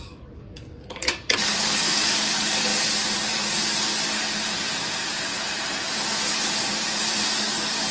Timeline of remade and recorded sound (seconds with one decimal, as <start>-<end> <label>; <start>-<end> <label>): 0.0-2.7 remade; 2.7-7.4 recorded; 7.4-7.9 remade

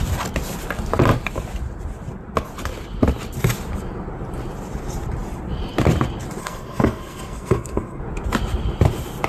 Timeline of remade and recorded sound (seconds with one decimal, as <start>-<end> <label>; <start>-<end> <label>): 0.0-6.4 recorded; 6.4-8.0 remade; 8.0-9.3 recorded

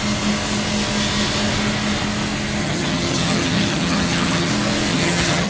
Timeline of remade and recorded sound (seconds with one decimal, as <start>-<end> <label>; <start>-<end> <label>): 0.0-2.6 recorded; 2.6-4.5 remade; 4.5-4.9 recorded; 4.9-5.5 remade

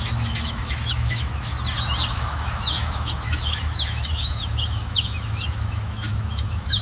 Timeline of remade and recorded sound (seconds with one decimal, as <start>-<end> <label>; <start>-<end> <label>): 0.0-1.5 remade; 1.5-2.1 recorded; 2.1-6.8 remade

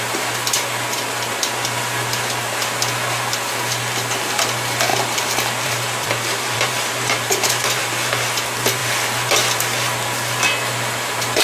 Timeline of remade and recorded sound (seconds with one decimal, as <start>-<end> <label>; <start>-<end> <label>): 0.0-4.9 recorded; 4.9-7.8 remade; 7.8-11.4 recorded

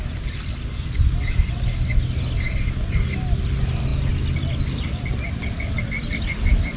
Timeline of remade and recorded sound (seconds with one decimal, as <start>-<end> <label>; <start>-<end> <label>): 0.0-6.8 recorded